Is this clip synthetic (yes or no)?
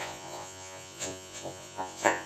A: yes